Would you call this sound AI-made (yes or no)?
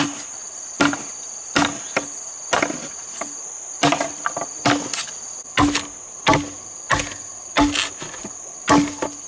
no